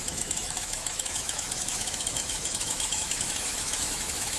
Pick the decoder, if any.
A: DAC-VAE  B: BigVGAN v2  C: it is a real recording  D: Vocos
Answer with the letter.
A